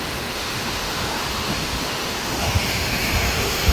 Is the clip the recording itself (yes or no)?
no